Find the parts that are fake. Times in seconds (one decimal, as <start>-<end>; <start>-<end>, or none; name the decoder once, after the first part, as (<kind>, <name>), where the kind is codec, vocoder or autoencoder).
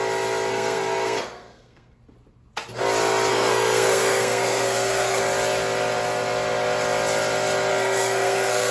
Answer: 0.5-2.0 (codec, SNAC); 3.3-5.2; 7.7-8.7